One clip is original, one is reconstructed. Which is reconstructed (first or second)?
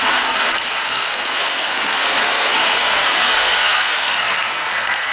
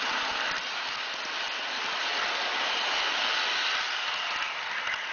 first